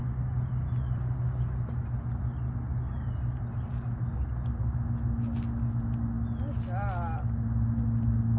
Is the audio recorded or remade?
recorded